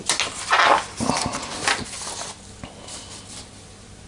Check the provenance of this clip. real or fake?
real